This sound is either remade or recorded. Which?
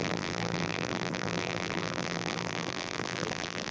remade